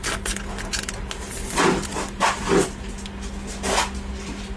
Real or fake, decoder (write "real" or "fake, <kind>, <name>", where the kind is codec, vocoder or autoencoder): real